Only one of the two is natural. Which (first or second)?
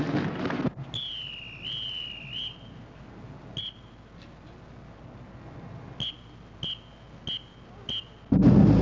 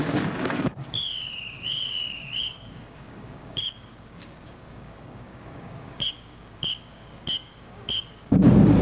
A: first